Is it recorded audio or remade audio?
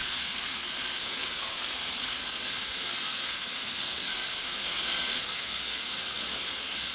remade